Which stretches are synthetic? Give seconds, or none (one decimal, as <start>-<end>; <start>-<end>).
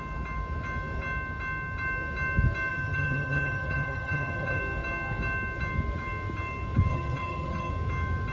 2.7-4.6; 6.9-7.7